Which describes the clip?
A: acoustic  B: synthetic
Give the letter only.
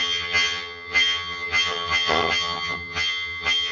B